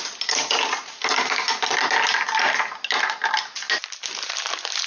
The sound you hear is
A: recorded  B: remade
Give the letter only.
A